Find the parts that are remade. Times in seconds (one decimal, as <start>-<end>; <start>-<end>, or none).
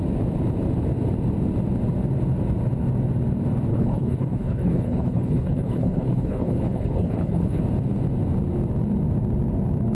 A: 3.7-7.6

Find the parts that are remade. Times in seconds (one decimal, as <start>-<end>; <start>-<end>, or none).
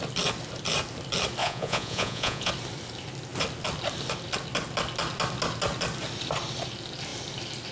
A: 1.4-2.5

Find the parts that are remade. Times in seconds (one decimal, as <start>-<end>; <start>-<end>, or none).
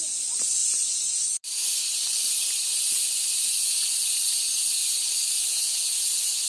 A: 5.4-5.9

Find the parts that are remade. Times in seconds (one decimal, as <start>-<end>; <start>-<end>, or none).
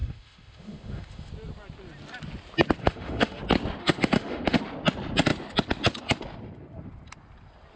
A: 0.0-1.3; 2.8-3.4; 3.8-4.6